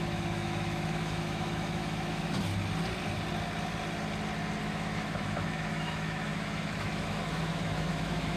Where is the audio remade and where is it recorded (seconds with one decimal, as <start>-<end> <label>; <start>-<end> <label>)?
0.0-2.5 remade; 2.5-4.6 recorded; 4.6-8.4 remade